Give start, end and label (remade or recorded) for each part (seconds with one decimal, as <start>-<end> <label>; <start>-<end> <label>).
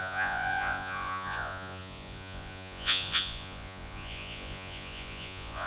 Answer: 0.0-5.7 remade